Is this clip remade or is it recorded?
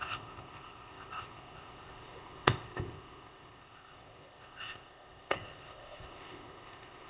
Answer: remade